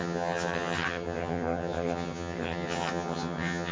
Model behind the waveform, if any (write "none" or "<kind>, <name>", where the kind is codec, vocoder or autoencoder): vocoder, HiFi-GAN